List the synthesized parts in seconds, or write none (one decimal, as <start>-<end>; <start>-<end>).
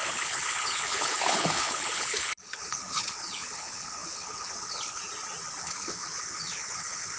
0.0-5.0; 5.6-7.2